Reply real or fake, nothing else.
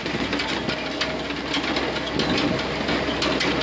real